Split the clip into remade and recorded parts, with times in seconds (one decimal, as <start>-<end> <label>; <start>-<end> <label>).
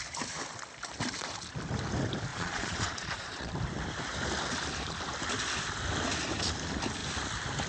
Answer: 0.0-2.3 recorded; 2.3-3.5 remade; 3.5-7.7 recorded